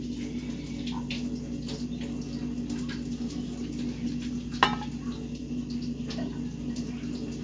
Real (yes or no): yes